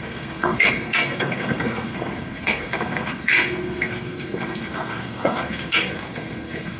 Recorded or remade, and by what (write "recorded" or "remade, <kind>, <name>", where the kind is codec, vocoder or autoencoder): remade, codec, SNAC